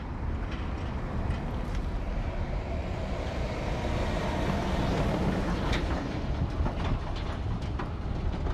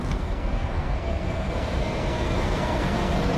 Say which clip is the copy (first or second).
second